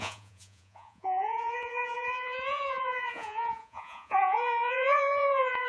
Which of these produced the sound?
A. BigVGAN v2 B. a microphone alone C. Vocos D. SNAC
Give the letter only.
C